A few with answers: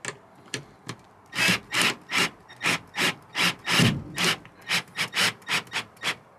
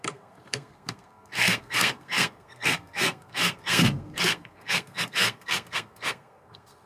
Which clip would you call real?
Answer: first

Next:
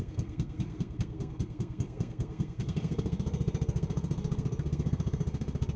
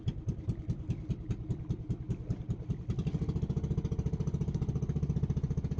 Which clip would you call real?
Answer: second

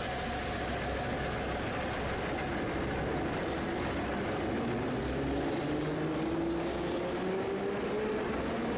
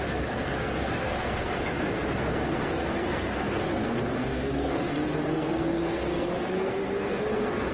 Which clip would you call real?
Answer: first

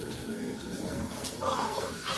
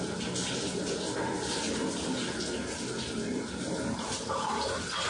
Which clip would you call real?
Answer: second